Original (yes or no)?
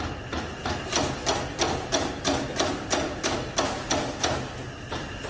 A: yes